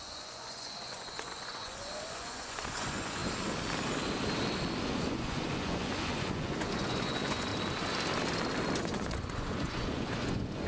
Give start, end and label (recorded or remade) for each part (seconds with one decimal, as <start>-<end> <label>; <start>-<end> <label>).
0.0-3.2 remade; 3.2-4.8 recorded; 4.8-7.5 remade; 7.5-8.8 recorded; 8.8-10.7 remade